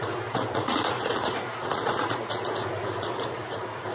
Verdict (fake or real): fake